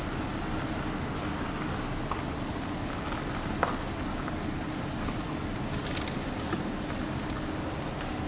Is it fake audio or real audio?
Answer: real